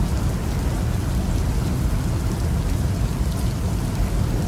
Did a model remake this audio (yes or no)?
no